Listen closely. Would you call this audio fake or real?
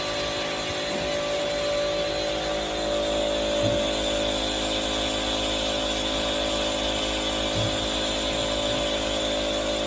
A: real